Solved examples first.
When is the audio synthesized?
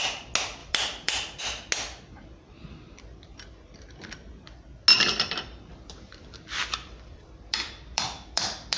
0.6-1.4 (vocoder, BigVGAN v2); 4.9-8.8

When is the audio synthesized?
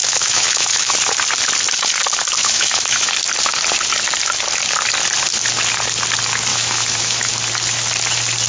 0.0-0.9 (autoencoder, DAC-VAE); 2.4-3.1; 6.5-7.3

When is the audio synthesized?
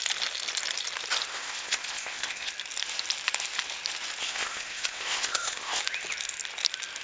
1.3-2.5 (codec, ZipCodec); 4.2-5.8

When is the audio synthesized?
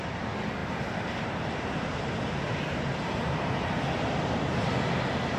0.6-3.8 (vocoder, BigVGAN v2)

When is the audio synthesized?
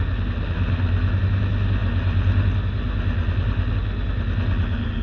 none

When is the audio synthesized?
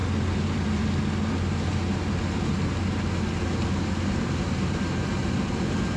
0.0-0.8 (vocoder, BigVGAN v2)